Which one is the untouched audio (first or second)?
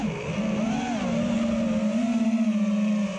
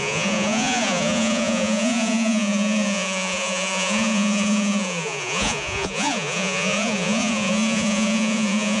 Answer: first